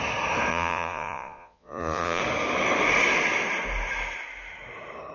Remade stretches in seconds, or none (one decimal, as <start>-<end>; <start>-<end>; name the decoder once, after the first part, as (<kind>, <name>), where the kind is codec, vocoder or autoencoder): 0.5-2.2 (vocoder, Vocos)